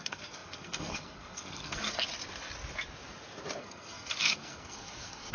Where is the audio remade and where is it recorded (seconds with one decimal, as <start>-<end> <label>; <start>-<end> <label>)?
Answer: 0.0-2.1 remade; 2.1-3.6 recorded; 3.6-5.3 remade